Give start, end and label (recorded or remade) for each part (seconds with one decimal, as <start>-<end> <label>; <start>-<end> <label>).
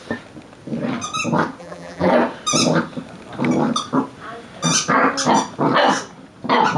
0.0-1.6 recorded; 1.6-2.1 remade; 2.1-6.8 recorded